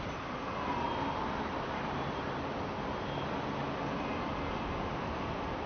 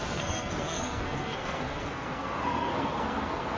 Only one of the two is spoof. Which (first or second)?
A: second